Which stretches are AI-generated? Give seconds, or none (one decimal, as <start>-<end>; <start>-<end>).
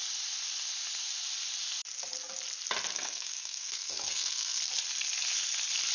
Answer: 2.9-4.6